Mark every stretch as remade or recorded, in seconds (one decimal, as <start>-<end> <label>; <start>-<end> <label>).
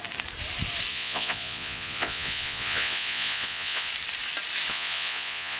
0.0-0.9 recorded; 0.9-3.9 remade; 3.9-4.7 recorded; 4.7-5.6 remade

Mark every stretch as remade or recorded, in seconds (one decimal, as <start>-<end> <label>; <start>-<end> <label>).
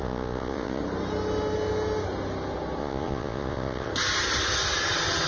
0.0-0.8 remade; 0.8-2.8 recorded; 2.8-3.9 remade; 3.9-5.3 recorded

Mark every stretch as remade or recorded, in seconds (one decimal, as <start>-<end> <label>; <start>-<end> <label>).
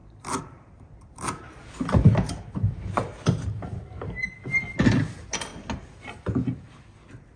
0.0-7.4 recorded